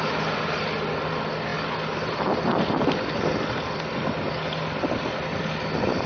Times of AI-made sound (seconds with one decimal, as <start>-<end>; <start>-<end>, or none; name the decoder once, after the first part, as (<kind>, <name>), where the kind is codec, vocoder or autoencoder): none